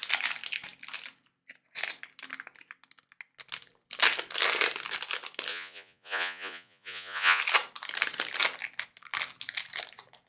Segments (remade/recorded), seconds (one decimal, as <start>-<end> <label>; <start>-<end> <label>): 0.0-5.5 recorded; 5.5-7.4 remade; 7.4-10.3 recorded